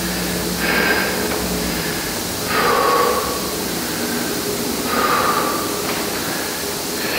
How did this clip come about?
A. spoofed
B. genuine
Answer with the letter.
A